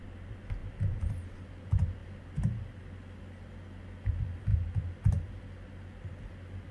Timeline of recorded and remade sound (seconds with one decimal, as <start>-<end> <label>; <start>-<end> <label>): 0.0-0.6 recorded; 0.6-1.1 remade; 1.1-6.7 recorded